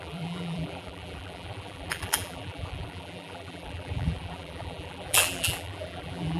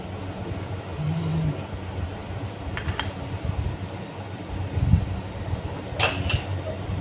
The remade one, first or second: first